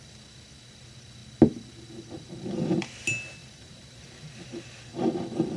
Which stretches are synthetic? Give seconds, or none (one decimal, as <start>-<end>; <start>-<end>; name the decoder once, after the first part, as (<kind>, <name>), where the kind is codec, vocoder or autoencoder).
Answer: 3.4-4.3 (vocoder, BigVGAN v2)